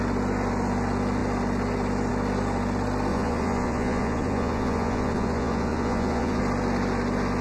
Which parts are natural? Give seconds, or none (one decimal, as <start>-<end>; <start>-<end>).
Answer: 0.0-3.1; 6.4-7.4